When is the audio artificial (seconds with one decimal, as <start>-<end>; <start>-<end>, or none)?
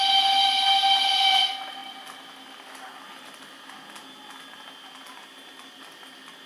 none